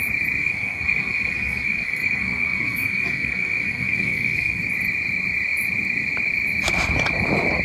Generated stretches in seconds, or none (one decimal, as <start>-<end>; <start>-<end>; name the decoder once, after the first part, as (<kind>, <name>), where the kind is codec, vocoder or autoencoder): 0.4-4.6 (codec, SNAC)